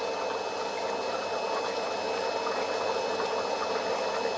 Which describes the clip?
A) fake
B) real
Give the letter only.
B